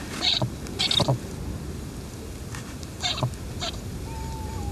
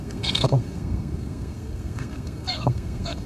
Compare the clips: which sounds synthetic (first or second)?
second